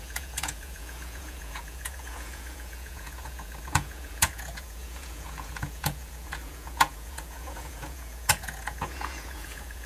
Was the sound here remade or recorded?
remade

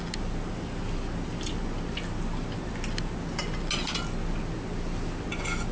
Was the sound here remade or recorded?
recorded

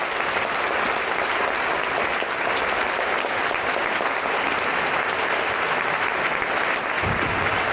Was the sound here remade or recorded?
recorded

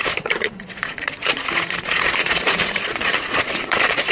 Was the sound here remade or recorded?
remade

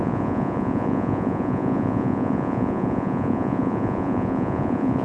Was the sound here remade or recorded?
remade